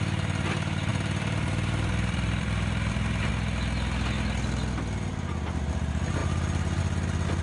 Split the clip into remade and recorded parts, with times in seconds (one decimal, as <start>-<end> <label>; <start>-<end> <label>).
0.0-0.9 recorded; 0.9-3.3 remade; 3.3-7.4 recorded